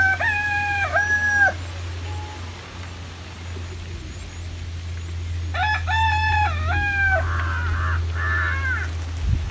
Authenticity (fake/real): real